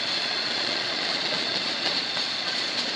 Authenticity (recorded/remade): remade